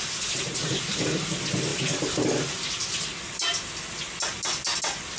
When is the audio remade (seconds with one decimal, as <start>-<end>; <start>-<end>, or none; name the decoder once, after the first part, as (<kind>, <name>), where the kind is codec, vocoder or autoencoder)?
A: none